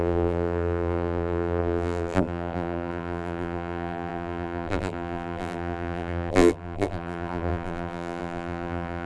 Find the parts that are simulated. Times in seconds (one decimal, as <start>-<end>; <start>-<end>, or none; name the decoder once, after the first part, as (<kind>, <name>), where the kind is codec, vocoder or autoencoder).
0.0-9.1 (vocoder, BigVGAN v2)